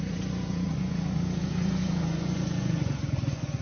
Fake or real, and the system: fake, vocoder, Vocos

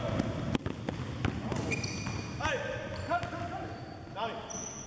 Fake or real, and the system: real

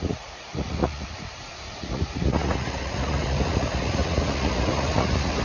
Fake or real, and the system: fake, vocoder, Vocos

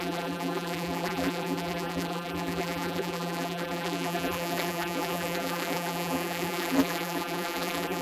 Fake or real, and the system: fake, vocoder, BigVGAN v2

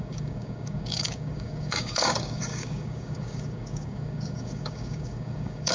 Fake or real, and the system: fake, codec, DAC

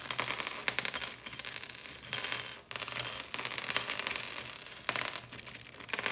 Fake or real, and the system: real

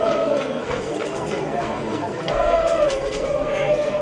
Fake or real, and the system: fake, codec, SNAC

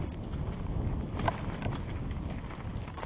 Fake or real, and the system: real